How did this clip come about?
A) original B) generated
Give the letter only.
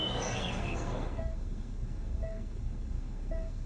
B